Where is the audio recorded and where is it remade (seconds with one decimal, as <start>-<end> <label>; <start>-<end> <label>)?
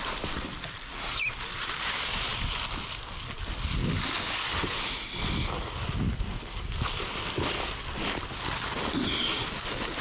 0.0-2.3 remade; 2.3-2.8 recorded; 2.8-3.8 remade; 3.8-6.6 recorded; 6.6-10.0 remade